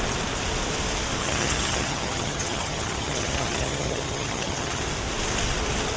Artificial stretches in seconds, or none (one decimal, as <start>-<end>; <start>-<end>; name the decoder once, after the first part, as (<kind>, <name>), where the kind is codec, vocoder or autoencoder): 1.2-4.8 (vocoder, HiFi-GAN)